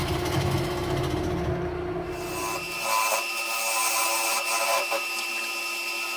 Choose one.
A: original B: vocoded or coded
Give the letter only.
A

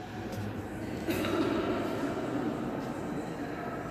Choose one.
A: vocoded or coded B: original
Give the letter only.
B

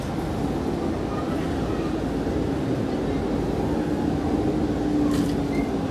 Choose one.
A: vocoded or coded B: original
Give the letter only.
B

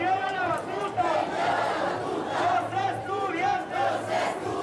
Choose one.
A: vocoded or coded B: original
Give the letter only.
B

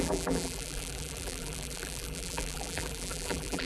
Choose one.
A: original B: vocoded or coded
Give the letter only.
B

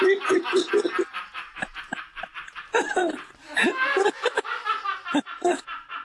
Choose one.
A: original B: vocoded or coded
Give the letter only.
B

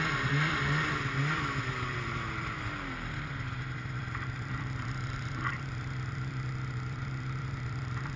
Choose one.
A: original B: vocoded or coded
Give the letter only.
B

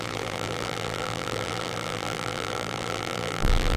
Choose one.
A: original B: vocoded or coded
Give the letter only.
B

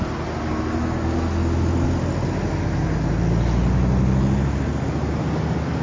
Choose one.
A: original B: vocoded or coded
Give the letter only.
A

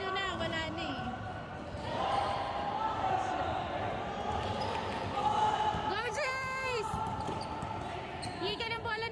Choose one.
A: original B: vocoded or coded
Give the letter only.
B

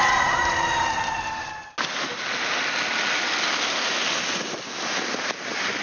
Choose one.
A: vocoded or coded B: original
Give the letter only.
B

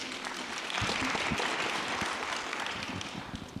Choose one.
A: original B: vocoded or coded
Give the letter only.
B